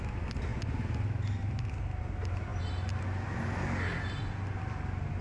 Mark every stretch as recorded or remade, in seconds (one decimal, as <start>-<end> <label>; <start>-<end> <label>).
0.0-5.2 recorded

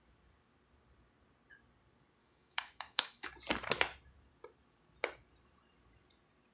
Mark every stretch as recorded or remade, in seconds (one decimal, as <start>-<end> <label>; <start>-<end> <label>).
0.0-2.2 recorded; 2.2-3.3 remade; 3.3-6.5 recorded

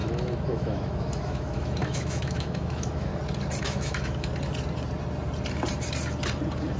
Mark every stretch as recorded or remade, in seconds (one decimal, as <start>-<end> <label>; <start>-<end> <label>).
0.0-3.1 remade; 3.1-3.6 recorded; 3.6-4.3 remade; 4.3-6.8 recorded

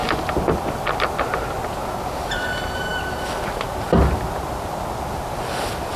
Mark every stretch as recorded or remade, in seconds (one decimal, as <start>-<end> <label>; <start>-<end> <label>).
0.0-6.0 recorded

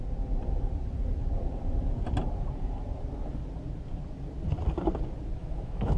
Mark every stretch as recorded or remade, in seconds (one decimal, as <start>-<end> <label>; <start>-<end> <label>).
0.0-5.4 recorded; 5.4-6.0 remade

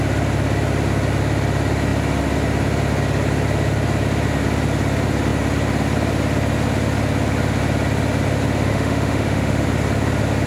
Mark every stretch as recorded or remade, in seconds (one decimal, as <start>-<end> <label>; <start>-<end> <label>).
0.0-8.7 recorded; 8.7-9.6 remade; 9.6-10.5 recorded

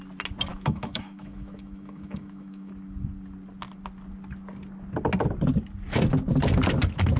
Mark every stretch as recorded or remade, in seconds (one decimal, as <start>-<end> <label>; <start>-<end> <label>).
0.0-0.5 recorded; 0.5-2.7 remade; 2.7-7.2 recorded